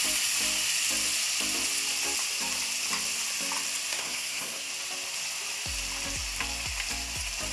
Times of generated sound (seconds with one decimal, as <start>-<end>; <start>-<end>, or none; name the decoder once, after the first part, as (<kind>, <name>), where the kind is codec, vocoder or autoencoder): 3.9-4.7 (codec, SNAC)